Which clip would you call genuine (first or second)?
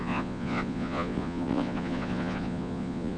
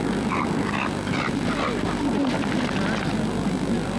second